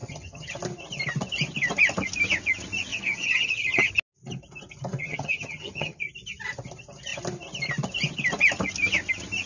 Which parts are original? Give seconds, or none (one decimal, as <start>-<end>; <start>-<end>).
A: 0.5-2.9; 3.9-5.0; 6.0-9.5